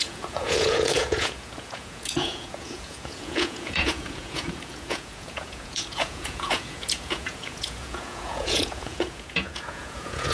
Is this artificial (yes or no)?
yes